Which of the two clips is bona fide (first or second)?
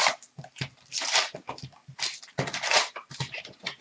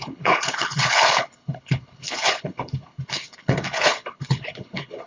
first